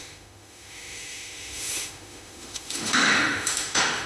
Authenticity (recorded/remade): remade